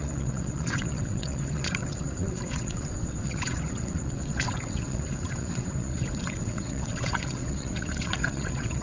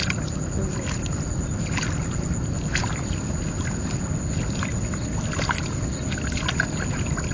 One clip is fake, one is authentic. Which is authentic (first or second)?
second